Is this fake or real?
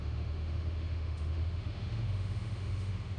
fake